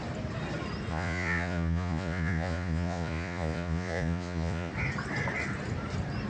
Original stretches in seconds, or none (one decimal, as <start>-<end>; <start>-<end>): 0.0-0.9; 4.7-6.3